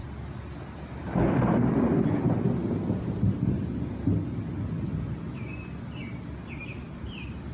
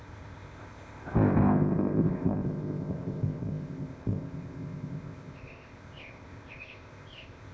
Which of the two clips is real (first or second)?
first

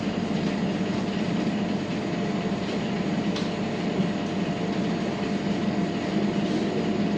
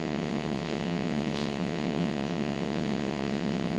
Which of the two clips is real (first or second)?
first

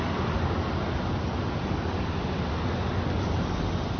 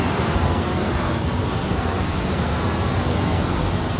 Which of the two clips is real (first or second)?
first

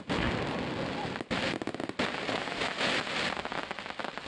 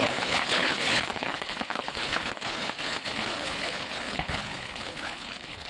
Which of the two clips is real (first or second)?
first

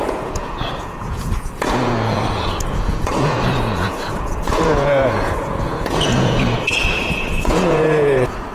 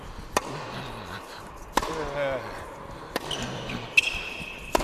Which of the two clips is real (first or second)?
second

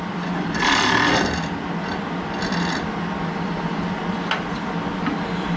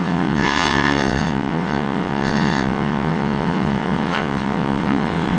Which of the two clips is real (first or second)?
first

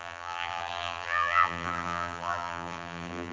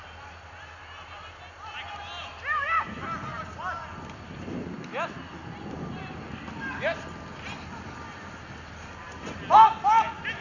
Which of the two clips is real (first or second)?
second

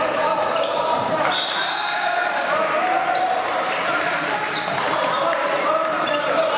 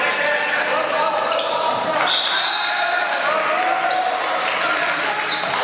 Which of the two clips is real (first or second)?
second